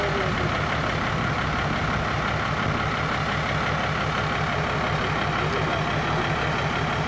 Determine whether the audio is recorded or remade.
recorded